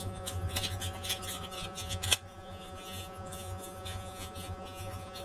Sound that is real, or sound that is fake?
fake